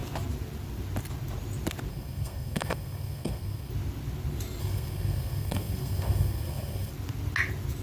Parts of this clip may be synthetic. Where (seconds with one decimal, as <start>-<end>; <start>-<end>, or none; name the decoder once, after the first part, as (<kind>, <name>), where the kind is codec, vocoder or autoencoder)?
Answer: 1.9-3.7 (codec, SNAC); 4.6-6.9